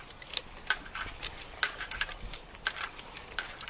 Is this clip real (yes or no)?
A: no